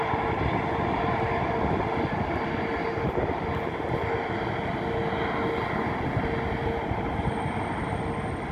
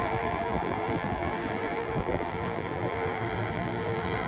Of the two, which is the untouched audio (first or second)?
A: first